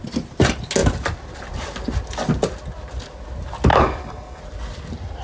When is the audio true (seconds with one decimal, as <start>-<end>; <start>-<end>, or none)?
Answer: 0.0-3.7; 4.4-5.2